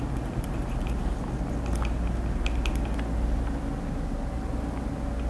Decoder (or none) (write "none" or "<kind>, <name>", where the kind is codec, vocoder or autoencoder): none